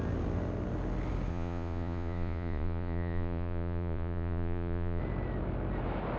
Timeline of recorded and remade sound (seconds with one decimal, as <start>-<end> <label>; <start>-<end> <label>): 0.0-1.3 recorded; 1.3-5.0 remade; 5.0-6.2 recorded

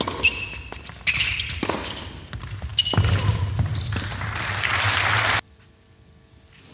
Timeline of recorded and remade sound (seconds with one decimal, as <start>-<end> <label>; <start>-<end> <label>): 0.0-6.7 recorded

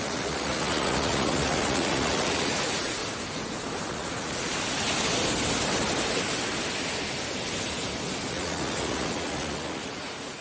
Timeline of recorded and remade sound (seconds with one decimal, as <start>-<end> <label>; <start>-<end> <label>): 0.0-3.0 remade; 3.0-3.9 recorded; 3.9-4.5 remade; 4.5-8.3 recorded; 8.3-10.4 remade

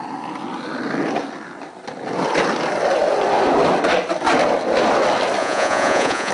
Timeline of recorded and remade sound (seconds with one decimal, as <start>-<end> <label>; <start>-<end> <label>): 0.0-5.4 recorded; 5.4-6.3 remade

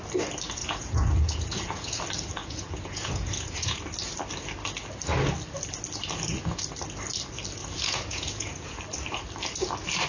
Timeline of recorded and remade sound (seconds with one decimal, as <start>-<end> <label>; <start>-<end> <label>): 0.0-0.6 recorded; 0.6-2.0 remade; 2.0-2.4 recorded; 2.4-3.8 remade; 3.8-7.6 recorded; 7.6-8.8 remade; 8.8-10.1 recorded

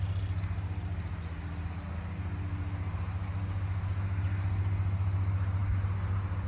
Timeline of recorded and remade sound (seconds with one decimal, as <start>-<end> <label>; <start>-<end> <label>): 0.0-6.5 recorded

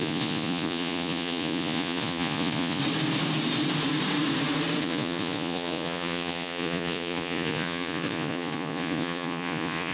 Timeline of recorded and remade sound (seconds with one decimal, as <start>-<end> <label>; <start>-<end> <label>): 0.0-2.8 remade; 2.8-4.8 recorded; 4.8-9.9 remade